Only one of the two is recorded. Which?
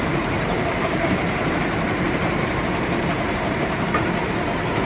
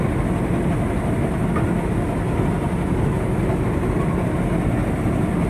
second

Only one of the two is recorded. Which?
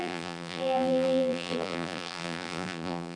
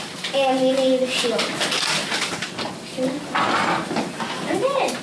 second